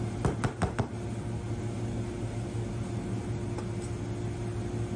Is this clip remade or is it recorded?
recorded